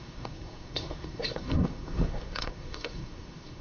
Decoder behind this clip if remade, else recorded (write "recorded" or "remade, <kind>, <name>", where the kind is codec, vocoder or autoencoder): remade, codec, SNAC